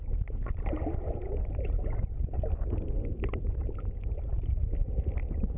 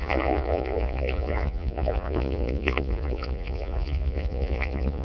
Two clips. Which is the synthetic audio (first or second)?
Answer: second